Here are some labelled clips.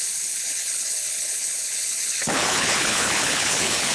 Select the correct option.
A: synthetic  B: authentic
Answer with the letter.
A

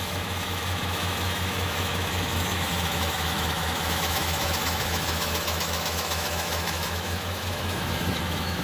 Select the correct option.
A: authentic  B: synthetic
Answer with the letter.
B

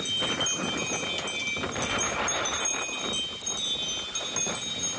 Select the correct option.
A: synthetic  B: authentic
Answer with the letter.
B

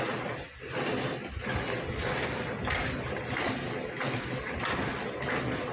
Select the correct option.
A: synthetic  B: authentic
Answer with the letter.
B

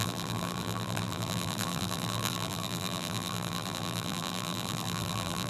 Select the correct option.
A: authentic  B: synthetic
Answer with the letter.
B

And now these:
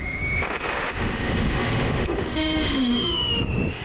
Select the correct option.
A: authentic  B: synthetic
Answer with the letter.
B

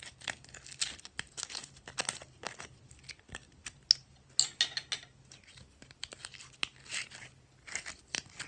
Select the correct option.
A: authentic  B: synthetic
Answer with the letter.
A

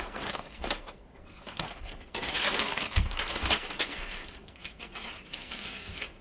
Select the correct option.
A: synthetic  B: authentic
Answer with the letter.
A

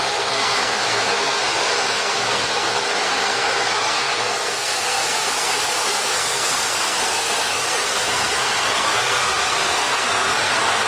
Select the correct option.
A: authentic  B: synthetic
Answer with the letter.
B